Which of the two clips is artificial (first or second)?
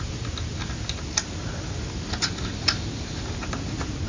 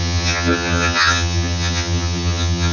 second